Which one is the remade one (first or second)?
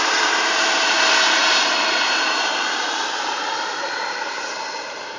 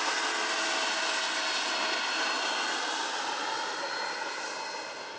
first